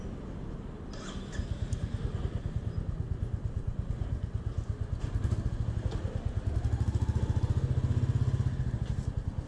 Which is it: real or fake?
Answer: real